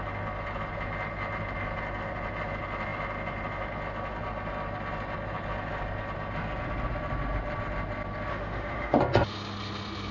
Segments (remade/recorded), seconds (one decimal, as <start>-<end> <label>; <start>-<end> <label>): 0.0-8.3 recorded; 8.3-9.0 remade; 9.0-10.1 recorded